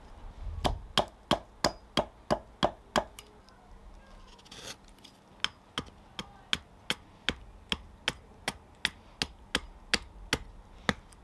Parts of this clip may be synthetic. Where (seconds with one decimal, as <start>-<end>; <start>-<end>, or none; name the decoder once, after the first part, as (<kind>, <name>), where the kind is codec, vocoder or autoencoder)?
none